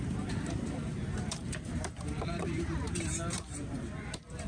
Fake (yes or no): yes